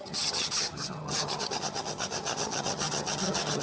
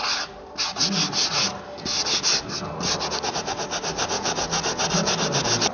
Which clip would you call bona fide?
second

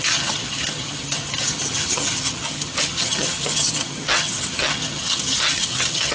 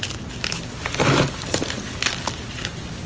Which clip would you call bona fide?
second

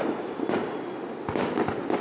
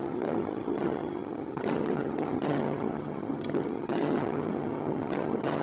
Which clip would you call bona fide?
first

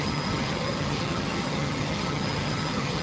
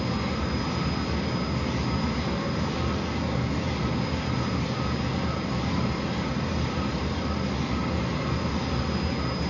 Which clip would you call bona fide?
second